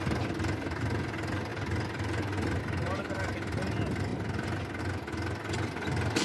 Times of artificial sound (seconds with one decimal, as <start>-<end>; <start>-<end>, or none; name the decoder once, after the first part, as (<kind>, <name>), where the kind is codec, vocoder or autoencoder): none